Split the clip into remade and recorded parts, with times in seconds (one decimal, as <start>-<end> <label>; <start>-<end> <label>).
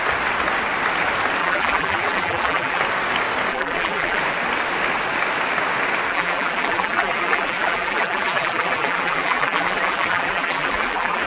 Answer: 0.0-1.4 recorded; 1.4-2.8 remade; 2.8-3.5 recorded; 3.5-4.2 remade; 4.2-6.1 recorded; 6.1-11.3 remade